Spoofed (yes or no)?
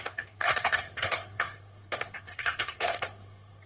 yes